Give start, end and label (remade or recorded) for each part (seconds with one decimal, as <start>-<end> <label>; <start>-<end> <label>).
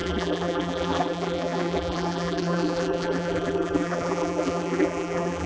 0.0-5.5 remade